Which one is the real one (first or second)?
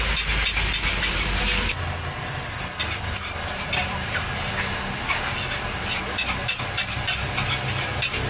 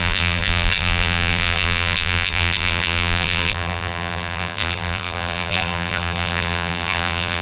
first